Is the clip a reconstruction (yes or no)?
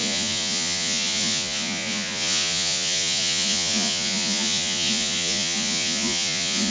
yes